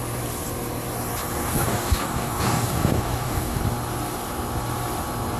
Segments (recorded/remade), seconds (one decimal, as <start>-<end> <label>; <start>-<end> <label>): 0.0-1.4 recorded; 1.4-3.6 remade; 3.6-5.4 recorded